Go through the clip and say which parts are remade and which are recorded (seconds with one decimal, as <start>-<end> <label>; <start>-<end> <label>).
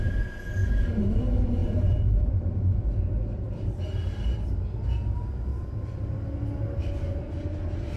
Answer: 0.0-0.6 recorded; 0.6-1.2 remade; 1.2-1.6 recorded; 1.6-2.3 remade; 2.3-5.5 recorded; 5.5-6.0 remade; 6.0-8.0 recorded